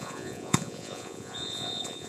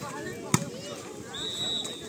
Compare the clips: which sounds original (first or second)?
second